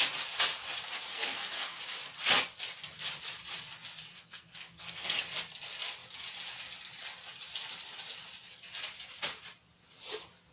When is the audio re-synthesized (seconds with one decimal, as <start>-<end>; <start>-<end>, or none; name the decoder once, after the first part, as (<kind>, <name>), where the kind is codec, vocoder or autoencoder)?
1.1-1.8 (codec, SNAC); 4.1-5.2